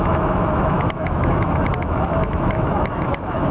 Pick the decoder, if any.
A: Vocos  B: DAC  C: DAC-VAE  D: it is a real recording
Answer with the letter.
C